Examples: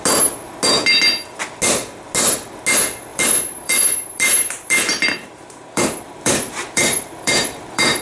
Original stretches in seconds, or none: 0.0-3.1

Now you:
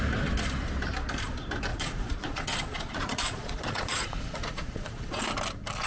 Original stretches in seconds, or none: 0.0-1.7; 5.2-5.9

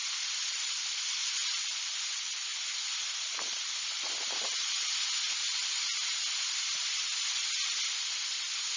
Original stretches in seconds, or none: 0.0-8.8

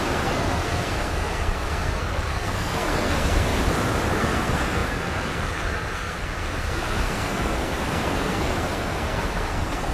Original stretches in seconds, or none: 3.5-4.2

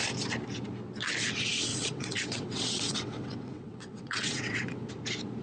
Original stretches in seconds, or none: 0.0-1.7; 4.9-5.4

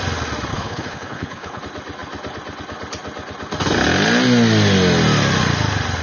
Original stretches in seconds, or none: 0.0-0.5; 1.6-6.0